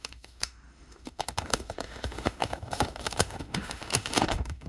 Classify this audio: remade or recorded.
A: remade